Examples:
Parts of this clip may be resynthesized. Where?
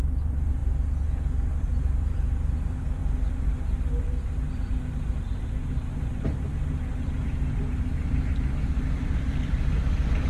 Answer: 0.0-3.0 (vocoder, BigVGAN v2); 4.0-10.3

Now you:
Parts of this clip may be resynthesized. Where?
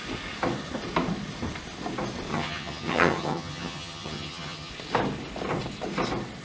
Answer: 2.3-4.7 (vocoder, HiFi-GAN)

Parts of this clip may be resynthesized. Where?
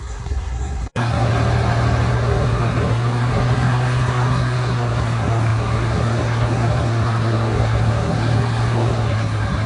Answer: 0.0-1.3 (codec, SNAC); 2.1-9.7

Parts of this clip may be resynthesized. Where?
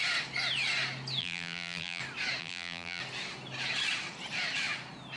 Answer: 1.2-2.0 (vocoder, BigVGAN v2); 2.4-3.0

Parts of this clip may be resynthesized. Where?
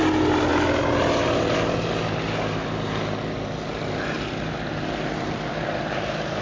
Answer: none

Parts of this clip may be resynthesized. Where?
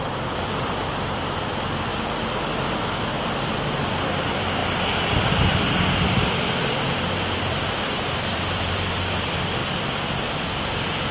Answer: 0.0-1.9 (vocoder, BigVGAN v2); 3.9-9.6; 10.3-11.1